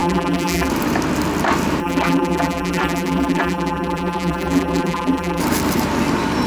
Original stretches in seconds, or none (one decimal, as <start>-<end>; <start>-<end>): 0.7-1.8; 5.4-6.5